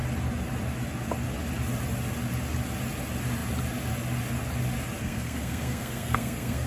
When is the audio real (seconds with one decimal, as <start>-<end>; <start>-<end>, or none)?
0.0-5.0